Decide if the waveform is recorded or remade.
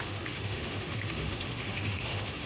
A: remade